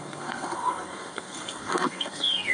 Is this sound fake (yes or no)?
yes